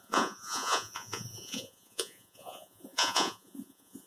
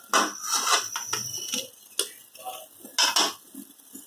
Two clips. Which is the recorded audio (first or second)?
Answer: second